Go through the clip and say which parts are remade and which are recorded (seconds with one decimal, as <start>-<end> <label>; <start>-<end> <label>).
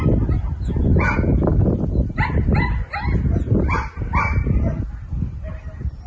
0.0-6.1 recorded